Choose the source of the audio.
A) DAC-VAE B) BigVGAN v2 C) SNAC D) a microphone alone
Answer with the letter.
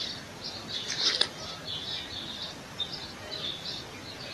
D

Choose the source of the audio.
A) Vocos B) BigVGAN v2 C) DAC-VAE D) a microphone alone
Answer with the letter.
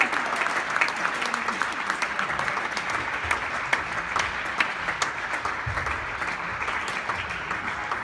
D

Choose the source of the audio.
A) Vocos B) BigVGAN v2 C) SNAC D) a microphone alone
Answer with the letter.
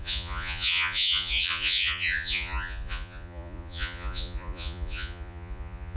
A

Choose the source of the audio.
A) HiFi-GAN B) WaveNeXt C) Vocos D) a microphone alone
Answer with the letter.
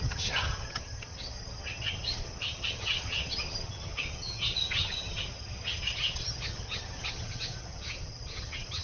A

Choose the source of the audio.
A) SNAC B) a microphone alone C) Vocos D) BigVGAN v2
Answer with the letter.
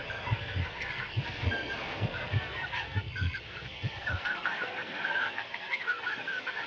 A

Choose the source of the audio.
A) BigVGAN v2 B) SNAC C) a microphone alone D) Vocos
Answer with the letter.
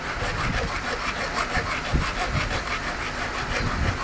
C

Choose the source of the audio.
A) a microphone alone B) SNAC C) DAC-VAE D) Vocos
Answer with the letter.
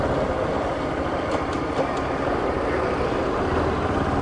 A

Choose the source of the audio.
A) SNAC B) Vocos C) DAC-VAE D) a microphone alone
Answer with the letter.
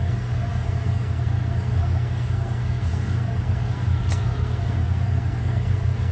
A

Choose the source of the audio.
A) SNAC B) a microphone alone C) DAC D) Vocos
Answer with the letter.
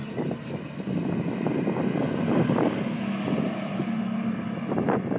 B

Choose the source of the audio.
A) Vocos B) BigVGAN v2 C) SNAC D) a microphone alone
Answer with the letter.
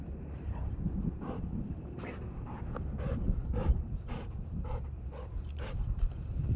B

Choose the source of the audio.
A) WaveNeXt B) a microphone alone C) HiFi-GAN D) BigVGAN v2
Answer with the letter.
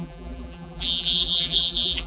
D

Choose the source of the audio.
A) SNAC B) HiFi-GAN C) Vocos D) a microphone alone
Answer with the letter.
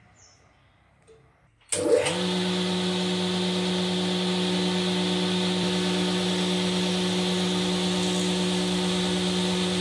D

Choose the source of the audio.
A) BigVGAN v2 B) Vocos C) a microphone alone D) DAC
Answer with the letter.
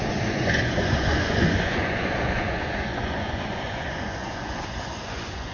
B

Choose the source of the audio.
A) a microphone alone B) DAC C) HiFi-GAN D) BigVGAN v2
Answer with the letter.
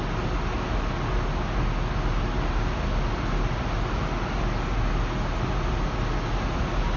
A